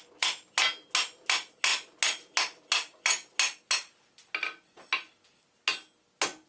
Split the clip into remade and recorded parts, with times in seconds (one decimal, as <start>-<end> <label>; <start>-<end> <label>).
0.0-6.5 recorded